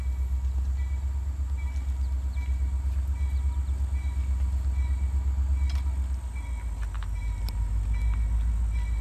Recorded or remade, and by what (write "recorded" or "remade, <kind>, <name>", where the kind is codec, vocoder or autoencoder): recorded